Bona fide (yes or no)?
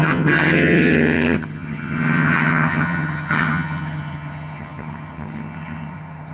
no